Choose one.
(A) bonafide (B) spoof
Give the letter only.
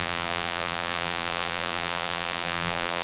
B